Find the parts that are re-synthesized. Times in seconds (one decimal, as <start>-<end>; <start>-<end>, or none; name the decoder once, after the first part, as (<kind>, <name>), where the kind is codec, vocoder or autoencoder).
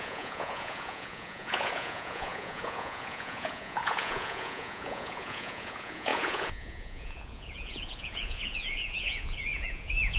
0.0-10.2 (vocoder, Vocos)